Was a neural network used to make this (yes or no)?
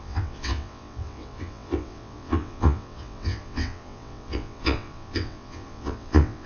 yes